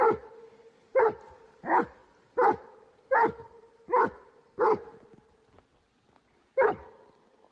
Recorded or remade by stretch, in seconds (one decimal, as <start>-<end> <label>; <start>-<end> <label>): 0.0-7.5 recorded